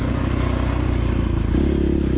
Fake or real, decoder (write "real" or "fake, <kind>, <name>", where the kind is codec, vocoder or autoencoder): real